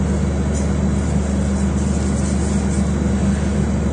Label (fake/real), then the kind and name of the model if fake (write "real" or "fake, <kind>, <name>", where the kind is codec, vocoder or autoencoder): real